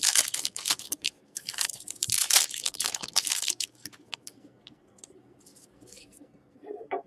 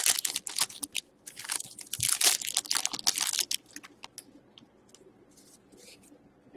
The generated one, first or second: first